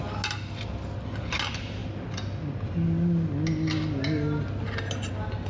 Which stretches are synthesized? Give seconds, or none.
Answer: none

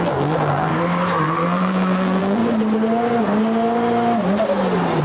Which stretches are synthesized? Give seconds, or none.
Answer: 0.0-0.7 (vocoder, BigVGAN v2); 1.2-2.4

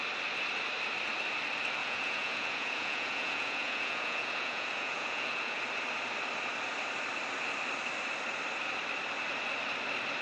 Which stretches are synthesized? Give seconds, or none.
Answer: 1.8-5.6 (vocoder, Vocos)

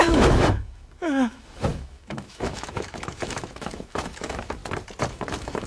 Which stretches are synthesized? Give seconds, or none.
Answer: 0.0-4.6 (autoencoder, DAC-VAE); 5.1-5.7

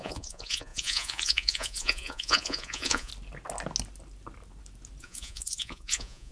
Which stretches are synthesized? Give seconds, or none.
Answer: 0.0-3.1 (vocoder, Vocos); 5.0-6.3

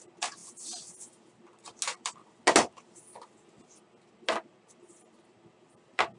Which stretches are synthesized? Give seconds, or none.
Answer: none